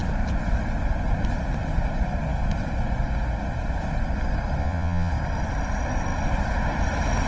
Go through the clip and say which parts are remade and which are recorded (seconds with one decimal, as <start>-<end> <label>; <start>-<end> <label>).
0.0-4.6 recorded; 4.6-5.1 remade; 5.1-7.3 recorded